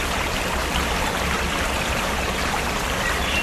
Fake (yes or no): no